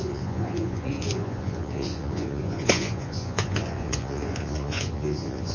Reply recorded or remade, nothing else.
remade